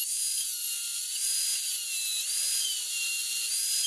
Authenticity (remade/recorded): recorded